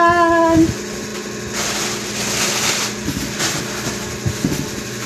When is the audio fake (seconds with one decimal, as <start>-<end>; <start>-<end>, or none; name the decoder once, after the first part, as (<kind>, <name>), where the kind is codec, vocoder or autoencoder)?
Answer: none